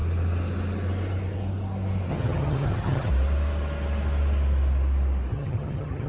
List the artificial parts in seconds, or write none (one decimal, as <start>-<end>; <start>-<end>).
2.1-3.1; 5.3-6.1